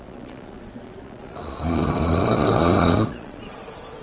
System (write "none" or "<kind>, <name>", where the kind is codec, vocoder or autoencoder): vocoder, Vocos